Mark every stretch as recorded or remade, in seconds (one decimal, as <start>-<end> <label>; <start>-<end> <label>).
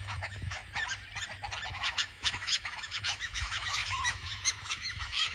0.0-0.6 remade; 0.6-1.7 recorded; 1.7-5.3 remade